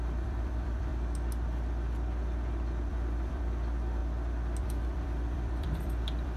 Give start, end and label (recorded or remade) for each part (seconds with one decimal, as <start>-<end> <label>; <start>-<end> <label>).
0.0-0.9 remade; 0.9-2.9 recorded; 2.9-4.0 remade; 4.0-4.6 recorded; 4.6-6.4 remade